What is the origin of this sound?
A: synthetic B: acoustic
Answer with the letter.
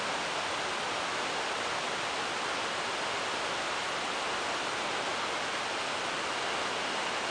B